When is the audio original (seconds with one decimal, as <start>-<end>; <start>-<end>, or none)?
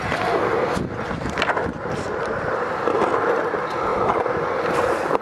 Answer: 0.0-3.9; 4.4-5.2